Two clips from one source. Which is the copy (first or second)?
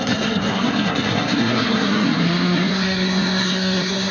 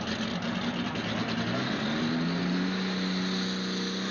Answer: first